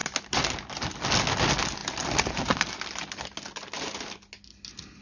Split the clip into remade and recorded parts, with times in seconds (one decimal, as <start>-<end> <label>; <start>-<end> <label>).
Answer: 0.0-5.0 recorded